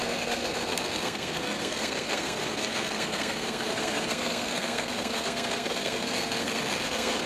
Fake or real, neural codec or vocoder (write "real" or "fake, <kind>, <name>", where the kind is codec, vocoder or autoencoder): fake, codec, SNAC